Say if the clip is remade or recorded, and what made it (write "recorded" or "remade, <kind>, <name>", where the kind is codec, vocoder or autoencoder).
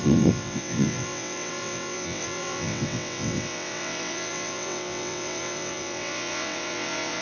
remade, vocoder, WaveNeXt